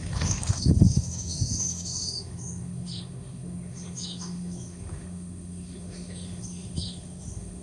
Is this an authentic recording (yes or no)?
no